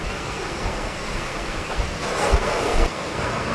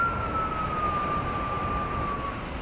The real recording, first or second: second